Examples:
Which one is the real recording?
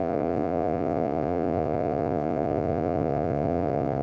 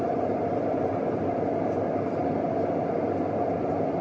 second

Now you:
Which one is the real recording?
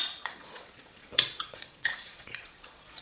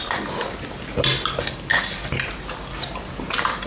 second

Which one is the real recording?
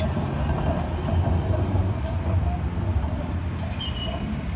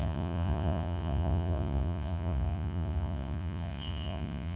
first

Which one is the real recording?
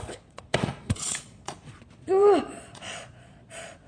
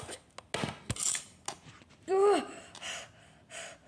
second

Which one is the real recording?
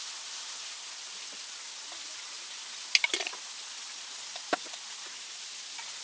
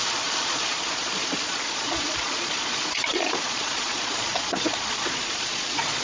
first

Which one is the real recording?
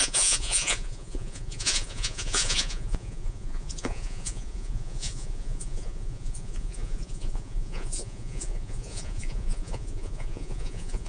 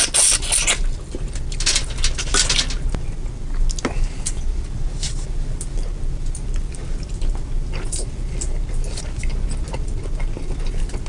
second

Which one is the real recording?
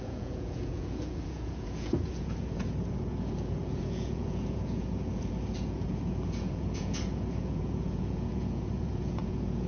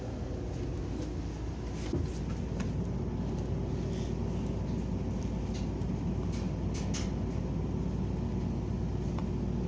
second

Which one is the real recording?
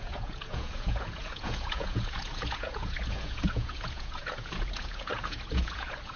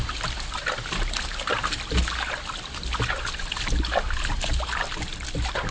second